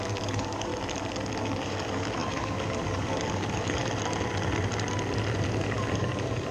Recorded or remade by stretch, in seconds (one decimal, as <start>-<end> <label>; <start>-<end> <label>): 0.0-0.7 remade; 0.7-1.4 recorded; 1.4-3.8 remade; 3.8-5.6 recorded; 5.6-6.5 remade